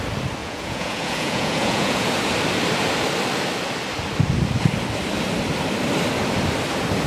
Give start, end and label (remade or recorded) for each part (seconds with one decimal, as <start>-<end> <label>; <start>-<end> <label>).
0.0-0.4 recorded; 0.4-2.1 remade; 2.1-7.1 recorded